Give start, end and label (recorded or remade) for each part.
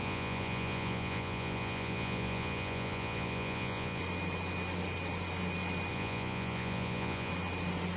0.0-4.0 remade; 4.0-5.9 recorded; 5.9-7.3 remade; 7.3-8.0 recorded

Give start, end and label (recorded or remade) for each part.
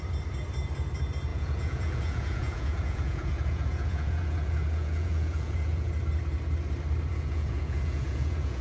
0.0-1.3 recorded; 1.3-5.9 remade; 5.9-7.1 recorded; 7.1-8.6 remade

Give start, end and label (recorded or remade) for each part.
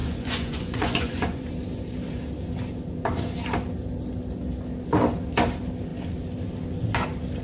0.0-1.5 remade; 1.5-7.4 recorded